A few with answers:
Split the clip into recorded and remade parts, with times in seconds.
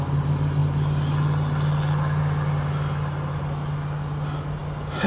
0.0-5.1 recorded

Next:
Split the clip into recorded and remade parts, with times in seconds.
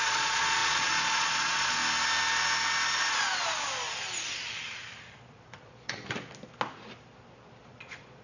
0.0-1.8 remade; 1.8-5.2 recorded; 5.2-6.0 remade; 6.0-7.6 recorded; 7.6-8.2 remade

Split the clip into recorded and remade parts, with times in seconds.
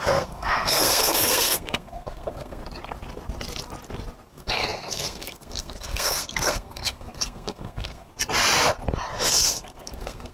0.0-2.6 remade; 2.6-4.3 recorded; 4.3-8.1 remade; 8.1-9.3 recorded; 9.3-10.3 remade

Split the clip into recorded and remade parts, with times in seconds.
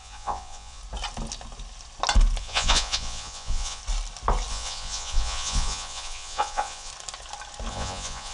0.0-0.8 remade; 0.8-2.4 recorded; 2.4-3.8 remade; 3.8-4.5 recorded; 4.5-6.9 remade; 6.9-7.7 recorded; 7.7-8.3 remade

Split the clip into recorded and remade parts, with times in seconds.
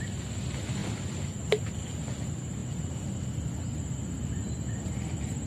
0.0-5.5 recorded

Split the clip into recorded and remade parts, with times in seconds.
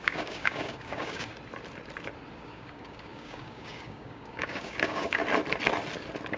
0.0-1.3 remade; 1.3-2.3 recorded; 2.3-5.2 remade; 5.2-6.4 recorded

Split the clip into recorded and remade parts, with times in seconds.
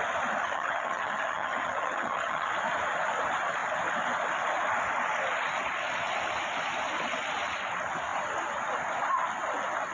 0.0-0.4 recorded; 0.4-2.5 remade; 2.5-9.9 recorded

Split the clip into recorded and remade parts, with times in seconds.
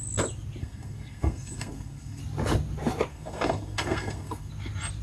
0.0-0.6 recorded; 0.6-2.2 remade; 2.2-3.1 recorded; 3.1-4.5 remade; 4.5-5.0 recorded